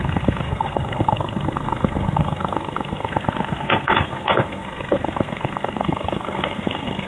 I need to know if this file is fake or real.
fake